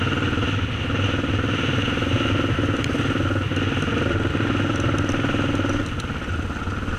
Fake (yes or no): no